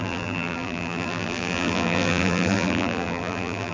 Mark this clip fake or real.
fake